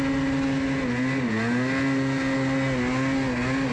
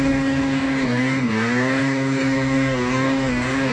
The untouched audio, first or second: first